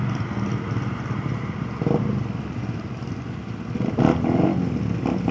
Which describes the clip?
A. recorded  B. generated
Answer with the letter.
A